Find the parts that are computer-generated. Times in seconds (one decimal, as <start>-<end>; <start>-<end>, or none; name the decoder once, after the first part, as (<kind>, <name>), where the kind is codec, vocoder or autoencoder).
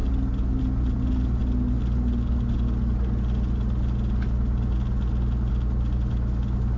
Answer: none